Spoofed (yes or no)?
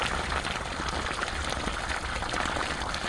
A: no